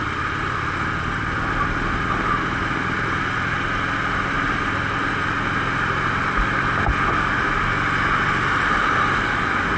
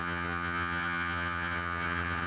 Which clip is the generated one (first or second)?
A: second